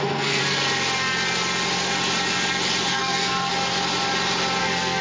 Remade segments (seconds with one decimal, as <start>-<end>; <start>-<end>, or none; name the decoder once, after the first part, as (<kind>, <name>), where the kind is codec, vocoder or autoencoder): 0.0-0.4 (codec, SNAC); 2.9-3.5; 4.6-5.0